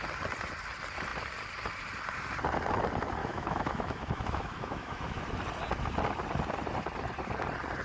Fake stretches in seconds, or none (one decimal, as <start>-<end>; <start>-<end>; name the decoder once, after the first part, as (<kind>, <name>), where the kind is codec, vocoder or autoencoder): 3.2-5.2 (autoencoder, DAC-VAE)